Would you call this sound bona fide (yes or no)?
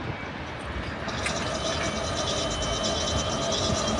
yes